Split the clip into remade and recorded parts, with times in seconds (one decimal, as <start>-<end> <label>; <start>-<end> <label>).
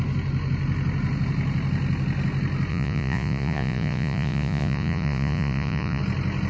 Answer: 0.0-2.7 recorded; 2.7-6.0 remade; 6.0-6.5 recorded